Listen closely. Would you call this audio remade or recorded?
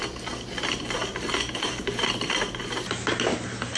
recorded